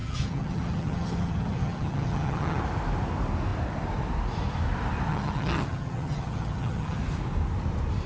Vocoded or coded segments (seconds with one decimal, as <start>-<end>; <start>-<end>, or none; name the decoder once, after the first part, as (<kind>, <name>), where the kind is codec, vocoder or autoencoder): 0.0-2.6 (vocoder, HiFi-GAN); 5.1-7.0